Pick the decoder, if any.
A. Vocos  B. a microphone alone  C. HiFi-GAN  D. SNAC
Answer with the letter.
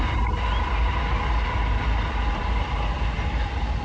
B